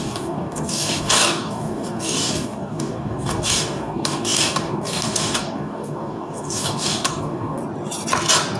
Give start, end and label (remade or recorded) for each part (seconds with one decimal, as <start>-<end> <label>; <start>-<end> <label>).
0.0-7.6 remade; 7.6-8.6 recorded

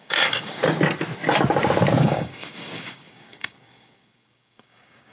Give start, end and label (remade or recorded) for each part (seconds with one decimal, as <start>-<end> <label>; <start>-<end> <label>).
0.0-0.6 remade; 0.6-2.0 recorded; 2.0-5.1 remade

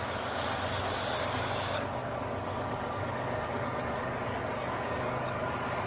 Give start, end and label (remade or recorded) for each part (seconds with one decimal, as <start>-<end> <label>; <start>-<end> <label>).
0.0-5.9 remade

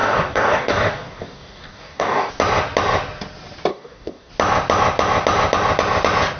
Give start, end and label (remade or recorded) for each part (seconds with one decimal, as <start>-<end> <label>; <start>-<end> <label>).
0.0-2.3 remade; 2.3-3.7 recorded; 3.7-4.3 remade; 4.3-6.4 recorded

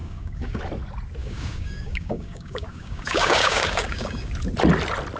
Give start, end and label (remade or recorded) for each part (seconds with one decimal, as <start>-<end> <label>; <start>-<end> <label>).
0.0-0.6 remade; 0.6-1.2 recorded; 1.2-4.3 remade; 4.3-5.2 recorded

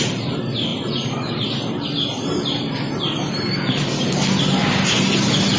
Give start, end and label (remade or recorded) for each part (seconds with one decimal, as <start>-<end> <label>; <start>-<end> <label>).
0.0-5.6 recorded